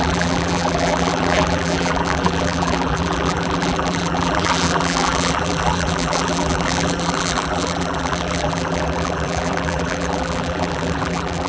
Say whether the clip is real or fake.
fake